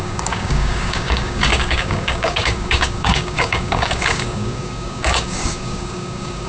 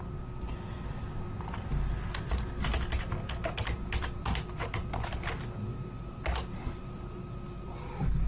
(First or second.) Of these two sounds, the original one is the second